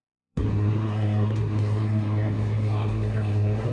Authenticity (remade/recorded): remade